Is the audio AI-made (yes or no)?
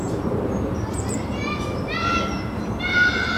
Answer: yes